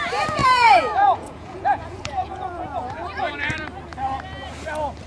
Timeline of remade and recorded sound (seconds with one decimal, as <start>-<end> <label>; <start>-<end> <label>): 0.0-0.4 recorded; 0.4-3.5 remade; 3.5-5.1 recorded